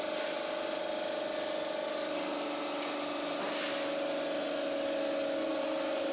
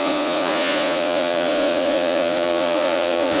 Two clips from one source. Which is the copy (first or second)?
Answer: second